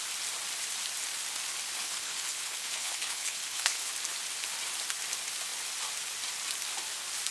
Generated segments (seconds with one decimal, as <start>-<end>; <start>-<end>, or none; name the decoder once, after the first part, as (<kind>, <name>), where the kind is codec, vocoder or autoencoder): 1.8-3.9 (codec, HILCodec)